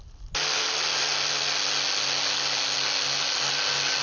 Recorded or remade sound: recorded